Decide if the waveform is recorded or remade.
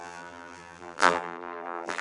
remade